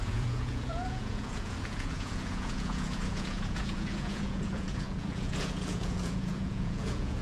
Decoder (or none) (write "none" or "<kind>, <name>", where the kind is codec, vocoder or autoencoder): vocoder, Vocos